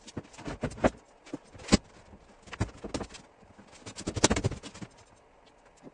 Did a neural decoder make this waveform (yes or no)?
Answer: no